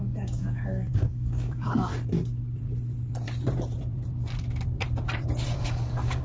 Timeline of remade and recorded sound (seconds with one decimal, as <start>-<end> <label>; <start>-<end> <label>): 0.0-1.9 remade; 1.9-5.6 recorded; 5.6-6.2 remade